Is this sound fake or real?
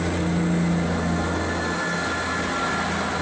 real